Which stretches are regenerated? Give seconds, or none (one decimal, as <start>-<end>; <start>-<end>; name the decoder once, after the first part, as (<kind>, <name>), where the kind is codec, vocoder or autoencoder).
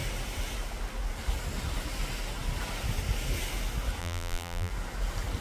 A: 4.0-4.7 (vocoder, BigVGAN v2)